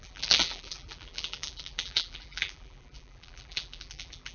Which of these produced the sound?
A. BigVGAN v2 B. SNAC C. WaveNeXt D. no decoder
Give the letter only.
A